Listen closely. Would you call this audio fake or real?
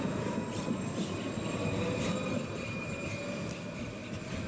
real